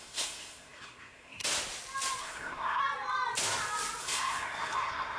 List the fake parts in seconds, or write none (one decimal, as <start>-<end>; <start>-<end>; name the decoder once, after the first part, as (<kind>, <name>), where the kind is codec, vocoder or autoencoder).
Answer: 0.0-1.4 (codec, SNAC); 2.2-2.8; 4.0-5.2